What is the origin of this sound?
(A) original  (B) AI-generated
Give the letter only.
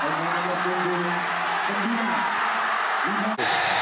A